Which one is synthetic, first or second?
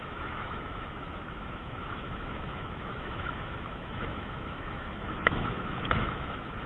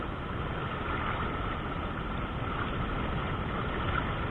first